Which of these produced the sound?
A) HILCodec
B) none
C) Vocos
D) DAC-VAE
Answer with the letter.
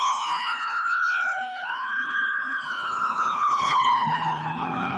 A